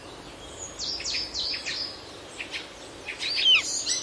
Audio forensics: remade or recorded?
recorded